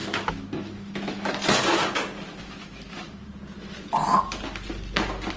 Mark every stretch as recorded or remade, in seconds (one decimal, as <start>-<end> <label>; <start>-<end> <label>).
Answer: 0.0-1.3 remade; 1.3-2.3 recorded; 2.3-3.4 remade; 3.4-5.4 recorded